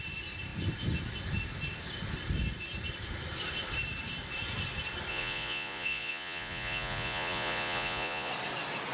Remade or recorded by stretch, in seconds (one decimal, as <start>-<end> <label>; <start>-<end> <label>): 0.0-5.1 recorded; 5.1-8.3 remade; 8.3-8.9 recorded